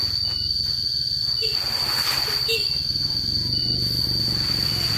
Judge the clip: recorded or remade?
recorded